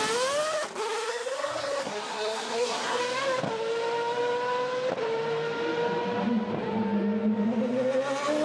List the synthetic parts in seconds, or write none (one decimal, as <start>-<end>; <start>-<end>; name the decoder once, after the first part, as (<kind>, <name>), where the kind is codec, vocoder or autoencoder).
1.1-3.0 (codec, SNAC)